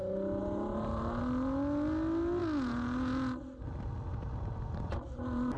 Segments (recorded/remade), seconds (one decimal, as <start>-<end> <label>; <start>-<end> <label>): 0.0-0.4 recorded; 0.4-1.2 remade; 1.2-5.6 recorded